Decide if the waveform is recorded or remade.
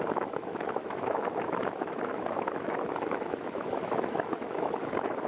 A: remade